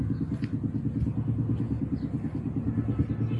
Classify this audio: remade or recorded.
recorded